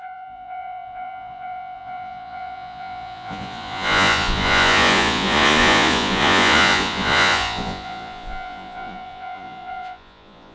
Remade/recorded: remade